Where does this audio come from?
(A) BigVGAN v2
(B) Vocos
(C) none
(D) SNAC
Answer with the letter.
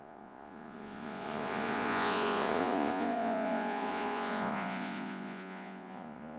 B